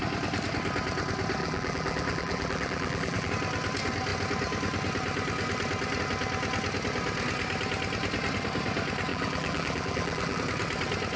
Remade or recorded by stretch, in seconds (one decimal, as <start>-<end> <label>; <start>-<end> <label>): 0.0-1.4 recorded; 1.4-3.3 remade; 3.3-9.1 recorded; 9.1-10.4 remade; 10.4-11.2 recorded